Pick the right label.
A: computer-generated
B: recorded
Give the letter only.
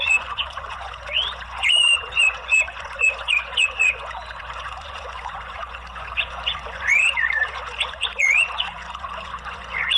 A